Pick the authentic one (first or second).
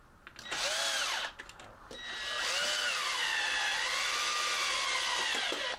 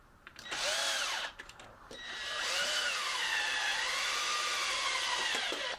first